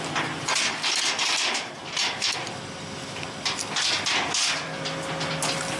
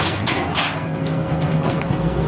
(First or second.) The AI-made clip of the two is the second